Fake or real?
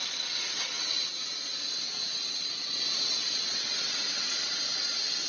fake